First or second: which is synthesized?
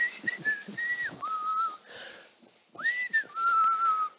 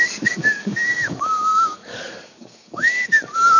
second